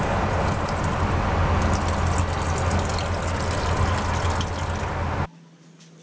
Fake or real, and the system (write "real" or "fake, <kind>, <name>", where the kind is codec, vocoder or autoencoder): real